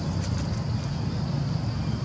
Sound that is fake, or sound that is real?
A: real